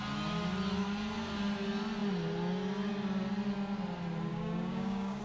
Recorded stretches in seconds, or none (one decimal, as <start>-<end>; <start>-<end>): 0.0-4.3